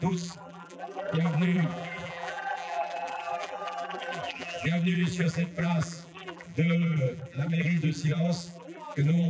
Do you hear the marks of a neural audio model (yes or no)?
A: yes